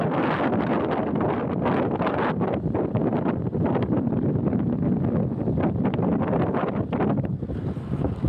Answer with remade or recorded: recorded